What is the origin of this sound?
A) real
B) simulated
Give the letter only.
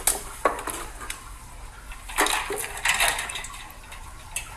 A